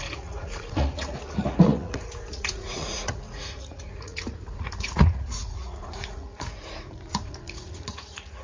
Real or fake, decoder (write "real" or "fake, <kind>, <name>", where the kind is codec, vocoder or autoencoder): fake, vocoder, Vocos